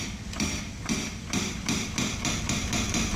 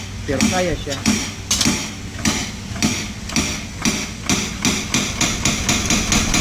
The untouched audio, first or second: second